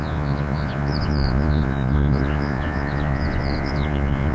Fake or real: fake